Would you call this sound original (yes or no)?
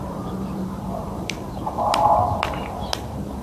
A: no